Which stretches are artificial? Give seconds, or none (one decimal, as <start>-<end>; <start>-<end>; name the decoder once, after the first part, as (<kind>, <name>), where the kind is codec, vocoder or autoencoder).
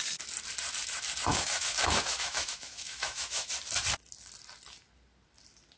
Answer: 1.3-3.5 (autoencoder, DAC-VAE)